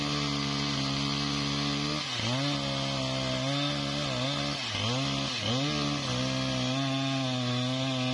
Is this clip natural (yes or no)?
yes